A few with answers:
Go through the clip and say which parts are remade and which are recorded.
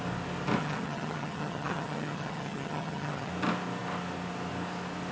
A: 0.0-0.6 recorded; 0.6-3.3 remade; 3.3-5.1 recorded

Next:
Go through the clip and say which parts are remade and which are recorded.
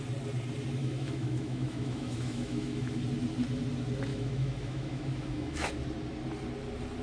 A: 0.0-0.8 recorded; 0.8-3.0 remade; 3.0-4.1 recorded; 4.1-5.7 remade; 5.7-7.0 recorded